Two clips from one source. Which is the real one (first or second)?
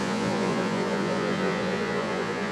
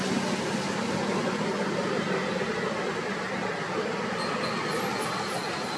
second